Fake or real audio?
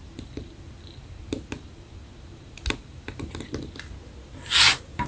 real